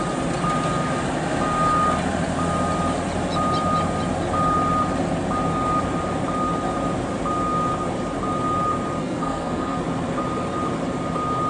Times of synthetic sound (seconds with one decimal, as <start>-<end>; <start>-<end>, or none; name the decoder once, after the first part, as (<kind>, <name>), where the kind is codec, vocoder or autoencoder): 9.0-9.8 (codec, SNAC)